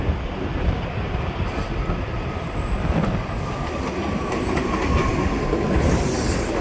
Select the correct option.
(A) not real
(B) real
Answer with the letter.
B